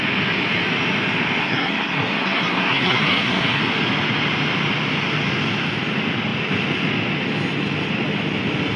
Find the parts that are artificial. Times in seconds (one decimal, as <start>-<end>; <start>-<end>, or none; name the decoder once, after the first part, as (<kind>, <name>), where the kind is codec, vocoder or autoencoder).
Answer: 1.4-3.6 (codec, SNAC)